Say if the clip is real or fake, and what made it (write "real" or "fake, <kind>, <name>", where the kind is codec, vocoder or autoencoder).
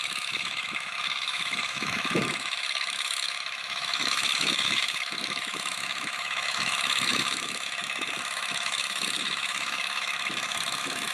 fake, autoencoder, DAC-VAE